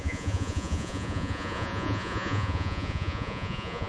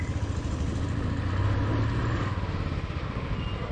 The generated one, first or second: first